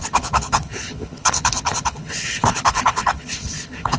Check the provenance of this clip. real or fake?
fake